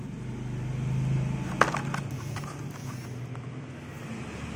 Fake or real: real